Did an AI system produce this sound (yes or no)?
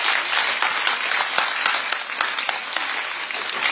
no